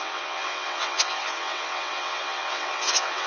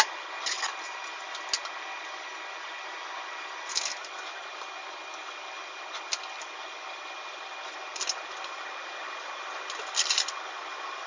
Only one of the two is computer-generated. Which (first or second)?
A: first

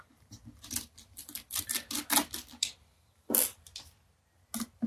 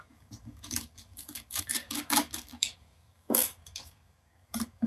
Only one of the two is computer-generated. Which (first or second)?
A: second